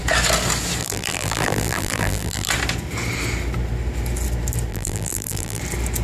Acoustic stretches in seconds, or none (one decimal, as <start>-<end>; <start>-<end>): 0.0-0.8; 2.5-4.7; 5.6-6.0